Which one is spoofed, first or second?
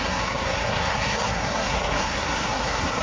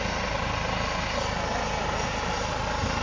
first